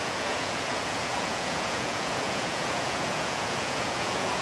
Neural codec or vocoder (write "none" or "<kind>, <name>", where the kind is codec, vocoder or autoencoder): vocoder, Vocos